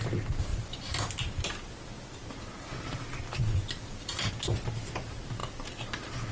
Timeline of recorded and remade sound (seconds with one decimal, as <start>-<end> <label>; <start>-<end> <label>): 0.0-6.3 recorded